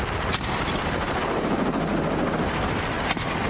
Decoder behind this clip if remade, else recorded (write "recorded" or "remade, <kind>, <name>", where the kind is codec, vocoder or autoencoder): recorded